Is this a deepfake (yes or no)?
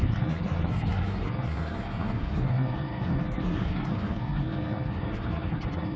yes